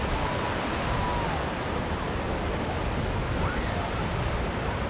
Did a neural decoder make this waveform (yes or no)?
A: no